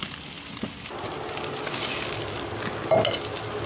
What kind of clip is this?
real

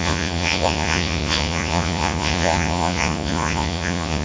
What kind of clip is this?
fake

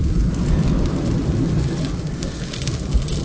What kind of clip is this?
real